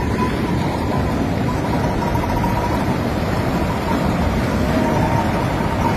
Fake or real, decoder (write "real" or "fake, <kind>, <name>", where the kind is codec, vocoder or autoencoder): real